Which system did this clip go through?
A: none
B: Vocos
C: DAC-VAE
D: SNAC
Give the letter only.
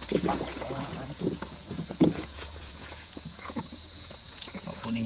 B